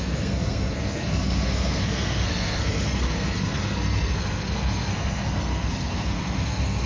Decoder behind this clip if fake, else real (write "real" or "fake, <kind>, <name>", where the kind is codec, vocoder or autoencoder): fake, codec, SNAC